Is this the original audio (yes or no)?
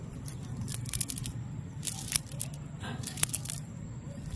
yes